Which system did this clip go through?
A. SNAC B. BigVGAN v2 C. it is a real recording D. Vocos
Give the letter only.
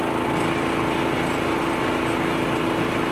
C